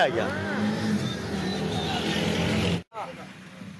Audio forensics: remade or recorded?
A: recorded